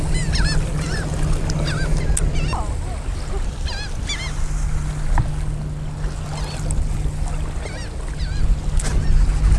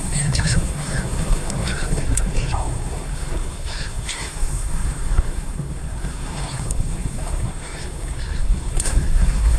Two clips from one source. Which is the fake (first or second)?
second